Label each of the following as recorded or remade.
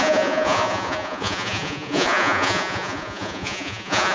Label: remade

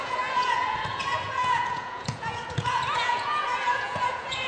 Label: remade